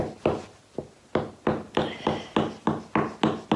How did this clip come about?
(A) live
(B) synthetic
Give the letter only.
A